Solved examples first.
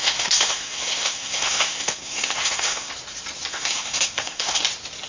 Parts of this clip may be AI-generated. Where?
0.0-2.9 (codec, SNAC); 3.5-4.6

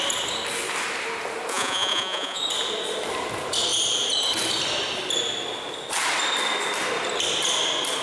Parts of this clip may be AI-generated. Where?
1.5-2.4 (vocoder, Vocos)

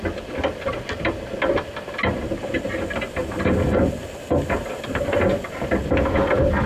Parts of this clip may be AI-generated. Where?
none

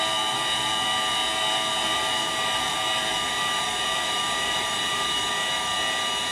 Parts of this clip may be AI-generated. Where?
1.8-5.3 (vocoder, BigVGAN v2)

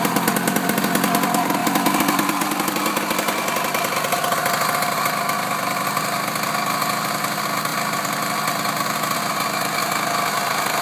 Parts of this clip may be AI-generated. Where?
none